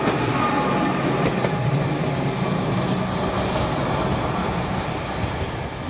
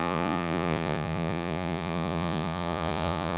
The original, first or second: first